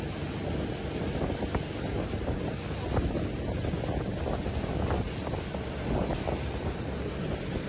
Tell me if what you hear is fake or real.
real